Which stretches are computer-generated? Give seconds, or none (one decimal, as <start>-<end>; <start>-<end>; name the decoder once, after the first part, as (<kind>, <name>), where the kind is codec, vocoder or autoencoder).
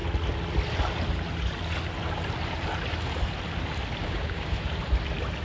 4.0-4.7 (codec, DAC)